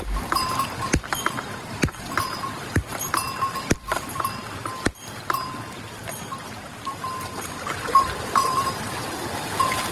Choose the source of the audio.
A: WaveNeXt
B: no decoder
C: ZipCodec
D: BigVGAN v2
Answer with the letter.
D